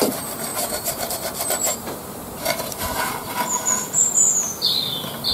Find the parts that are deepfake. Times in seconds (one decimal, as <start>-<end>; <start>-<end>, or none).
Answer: 0.5-1.1; 1.7-3.1